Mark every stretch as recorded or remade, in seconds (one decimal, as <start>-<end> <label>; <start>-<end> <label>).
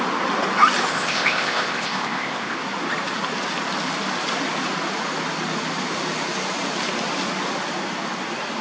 0.0-0.9 recorded; 0.9-2.6 remade; 2.6-8.6 recorded